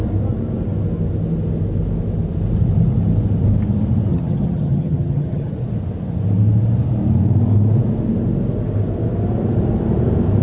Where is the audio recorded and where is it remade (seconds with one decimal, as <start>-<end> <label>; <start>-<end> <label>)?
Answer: 0.0-4.1 recorded; 4.1-5.5 remade; 5.5-10.4 recorded